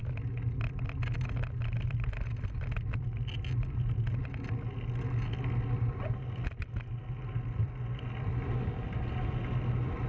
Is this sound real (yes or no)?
yes